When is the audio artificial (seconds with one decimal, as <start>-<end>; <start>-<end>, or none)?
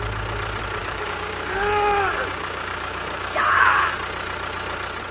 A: 0.8-3.9